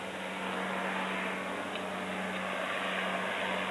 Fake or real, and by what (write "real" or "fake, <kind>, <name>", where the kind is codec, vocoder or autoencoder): real